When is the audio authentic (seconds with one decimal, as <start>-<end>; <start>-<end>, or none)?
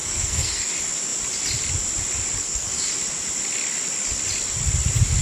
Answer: 0.7-2.4; 2.9-5.2